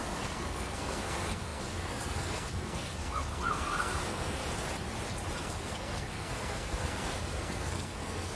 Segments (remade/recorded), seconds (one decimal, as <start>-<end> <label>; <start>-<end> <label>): 0.0-4.4 remade; 4.4-5.4 recorded; 5.4-8.4 remade